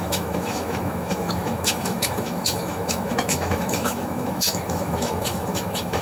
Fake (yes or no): yes